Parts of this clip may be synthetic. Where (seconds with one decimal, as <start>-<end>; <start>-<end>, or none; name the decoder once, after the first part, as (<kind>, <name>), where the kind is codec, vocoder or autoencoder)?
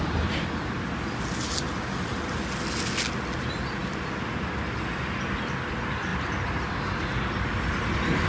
none